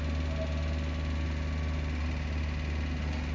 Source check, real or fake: real